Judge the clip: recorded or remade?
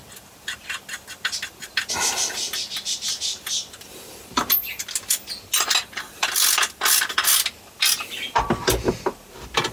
recorded